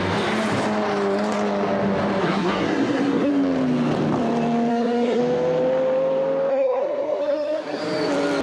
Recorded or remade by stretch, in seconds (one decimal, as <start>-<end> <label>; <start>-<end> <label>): 0.0-2.2 recorded; 2.2-3.3 remade; 3.3-4.7 recorded; 4.7-5.2 remade; 5.2-6.5 recorded; 6.5-7.8 remade; 7.8-8.4 recorded